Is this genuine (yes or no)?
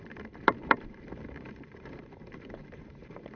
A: no